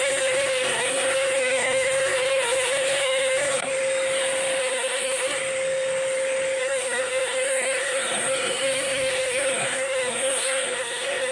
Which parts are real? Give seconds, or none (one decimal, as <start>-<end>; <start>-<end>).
3.7-4.6; 5.4-6.6